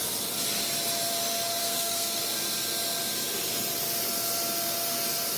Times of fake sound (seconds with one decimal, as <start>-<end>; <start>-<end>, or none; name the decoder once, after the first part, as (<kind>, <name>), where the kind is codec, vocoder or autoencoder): 1.6-2.2 (codec, SNAC)